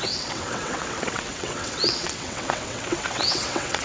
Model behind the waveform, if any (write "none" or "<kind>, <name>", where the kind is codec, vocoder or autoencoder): vocoder, WaveNeXt